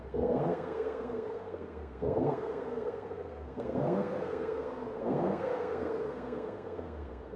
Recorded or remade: remade